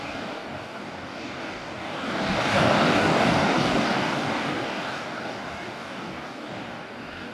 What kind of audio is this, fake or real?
fake